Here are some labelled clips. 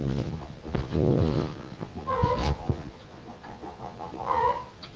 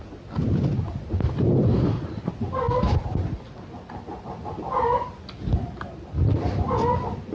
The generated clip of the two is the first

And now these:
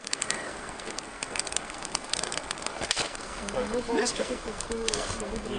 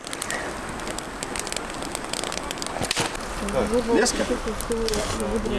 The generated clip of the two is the first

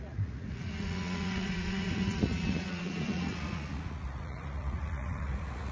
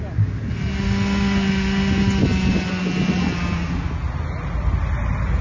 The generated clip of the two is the first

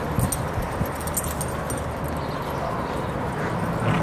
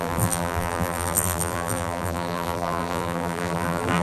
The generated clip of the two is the second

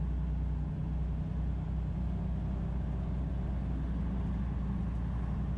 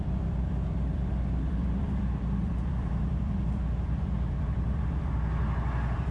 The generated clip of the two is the second